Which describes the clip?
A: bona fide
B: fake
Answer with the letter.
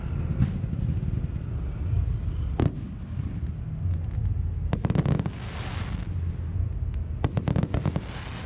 A